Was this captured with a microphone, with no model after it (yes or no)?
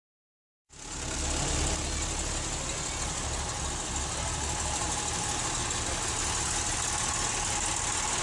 yes